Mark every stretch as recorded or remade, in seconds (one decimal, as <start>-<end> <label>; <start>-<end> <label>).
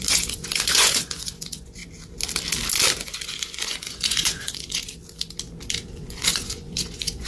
0.0-1.8 remade; 1.8-2.9 recorded; 2.9-4.8 remade; 4.8-5.9 recorded; 5.9-7.3 remade